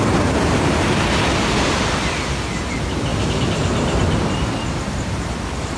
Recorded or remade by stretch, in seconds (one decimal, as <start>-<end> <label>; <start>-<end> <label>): 0.0-5.8 recorded